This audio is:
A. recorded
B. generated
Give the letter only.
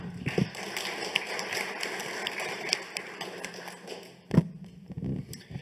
A